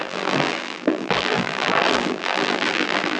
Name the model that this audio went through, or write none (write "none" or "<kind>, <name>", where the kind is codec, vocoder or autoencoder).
vocoder, BigVGAN v2